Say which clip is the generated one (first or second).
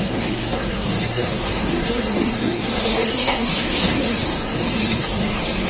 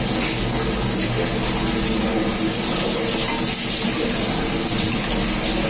first